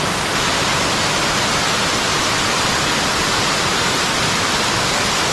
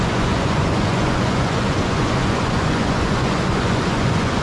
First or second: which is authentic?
first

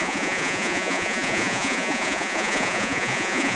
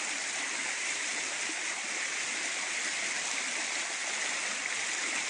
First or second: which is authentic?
second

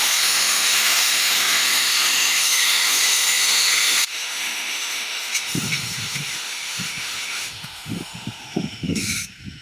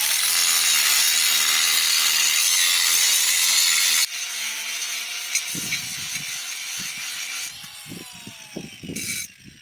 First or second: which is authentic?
second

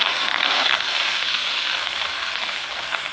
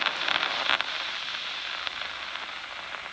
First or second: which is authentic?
second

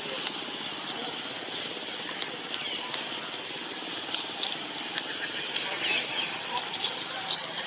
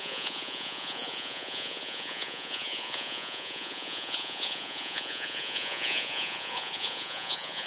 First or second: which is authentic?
first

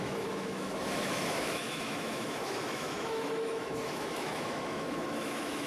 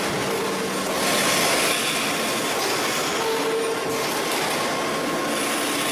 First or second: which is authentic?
second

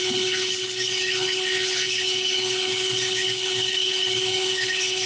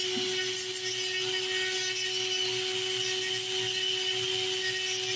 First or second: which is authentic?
second